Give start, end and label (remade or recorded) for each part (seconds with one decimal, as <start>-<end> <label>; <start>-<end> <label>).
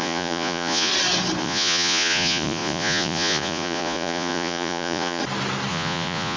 0.0-0.9 remade; 0.9-1.4 recorded; 1.4-5.2 remade; 5.2-5.7 recorded; 5.7-6.4 remade